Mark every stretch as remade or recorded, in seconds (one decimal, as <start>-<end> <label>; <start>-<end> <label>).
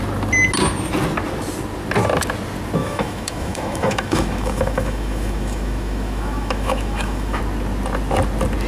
0.0-2.8 recorded; 2.8-7.4 remade; 7.4-8.7 recorded